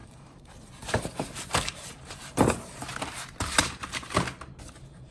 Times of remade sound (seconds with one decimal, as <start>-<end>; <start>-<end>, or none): 0.0-2.8; 3.4-3.8; 4.6-5.1